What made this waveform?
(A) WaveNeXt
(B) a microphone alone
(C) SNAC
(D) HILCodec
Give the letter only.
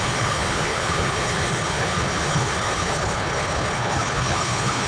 D